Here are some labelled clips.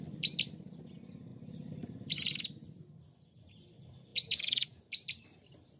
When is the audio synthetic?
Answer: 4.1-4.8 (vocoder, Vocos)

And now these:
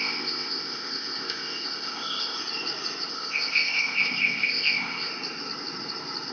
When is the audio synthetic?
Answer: 0.0-2.4 (codec, ZipCodec); 3.1-5.1